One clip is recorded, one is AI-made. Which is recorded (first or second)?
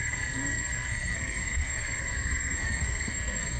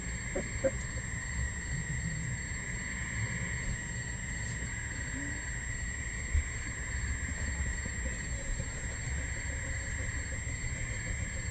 second